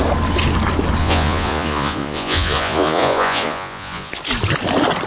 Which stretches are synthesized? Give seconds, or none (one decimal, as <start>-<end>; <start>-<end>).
1.0-4.1